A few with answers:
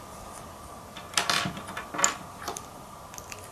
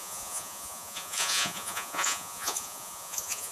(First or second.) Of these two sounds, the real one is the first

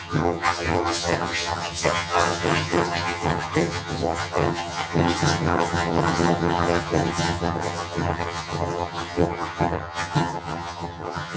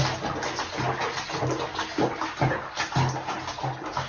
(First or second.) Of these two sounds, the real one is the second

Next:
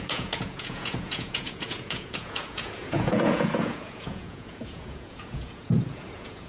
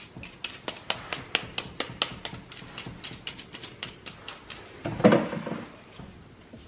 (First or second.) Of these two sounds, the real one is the second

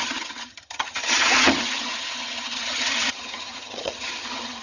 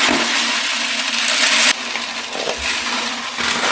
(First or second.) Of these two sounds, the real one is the second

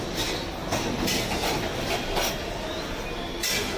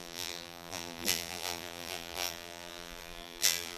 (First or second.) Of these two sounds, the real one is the first